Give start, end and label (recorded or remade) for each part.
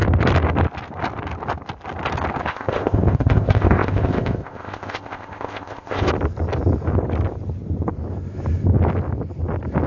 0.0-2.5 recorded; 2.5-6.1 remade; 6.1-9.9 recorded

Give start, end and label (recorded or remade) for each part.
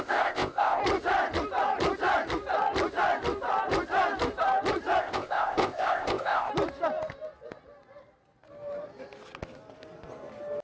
0.0-0.8 remade; 0.8-5.0 recorded; 5.0-6.5 remade; 6.5-10.6 recorded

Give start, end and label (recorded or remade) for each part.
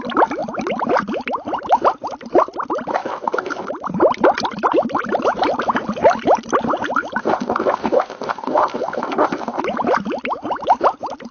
0.0-2.9 recorded; 2.9-3.7 remade; 3.7-7.2 recorded; 7.2-9.6 remade; 9.6-11.3 recorded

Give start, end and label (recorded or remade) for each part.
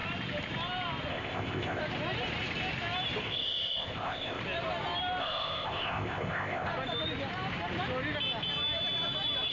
0.0-1.1 recorded; 1.1-1.8 remade; 1.8-3.2 recorded; 3.2-4.4 remade; 4.4-5.2 recorded; 5.2-6.7 remade; 6.7-9.5 recorded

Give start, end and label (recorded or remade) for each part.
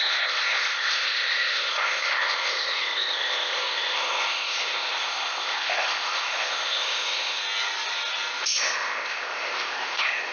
0.0-7.4 remade; 7.4-8.4 recorded; 8.4-10.3 remade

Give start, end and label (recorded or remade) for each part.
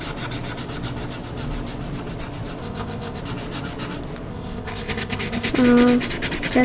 0.0-2.6 recorded; 2.6-3.2 remade; 3.2-4.3 recorded; 4.3-5.5 remade; 5.5-6.6 recorded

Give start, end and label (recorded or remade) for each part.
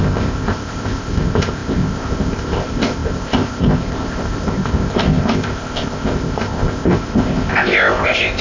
0.0-8.4 remade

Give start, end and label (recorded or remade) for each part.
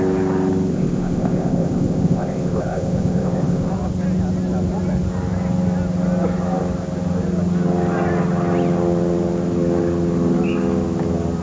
0.0-0.7 recorded; 0.7-3.7 remade; 3.7-11.4 recorded